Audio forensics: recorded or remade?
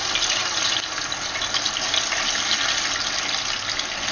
recorded